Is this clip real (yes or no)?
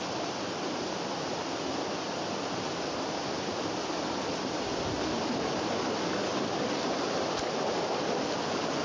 yes